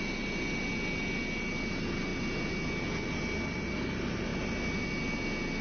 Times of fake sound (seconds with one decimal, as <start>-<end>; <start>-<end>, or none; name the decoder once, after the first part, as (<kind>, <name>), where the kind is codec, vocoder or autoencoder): none